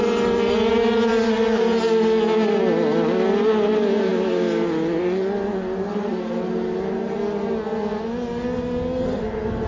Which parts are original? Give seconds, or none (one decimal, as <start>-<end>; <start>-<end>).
0.0-9.7